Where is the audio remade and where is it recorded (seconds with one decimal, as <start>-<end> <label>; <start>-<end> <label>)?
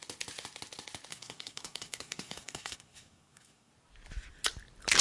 0.0-1.1 recorded; 1.1-3.7 remade; 3.7-5.0 recorded